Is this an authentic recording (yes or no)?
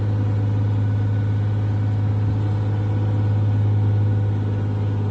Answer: yes